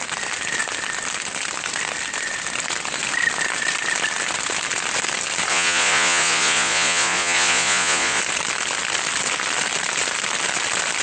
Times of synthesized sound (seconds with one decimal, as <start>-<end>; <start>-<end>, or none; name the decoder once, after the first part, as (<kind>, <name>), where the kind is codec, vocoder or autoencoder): 5.5-8.2 (vocoder, Vocos)